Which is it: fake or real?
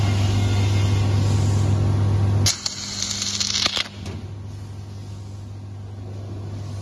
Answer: real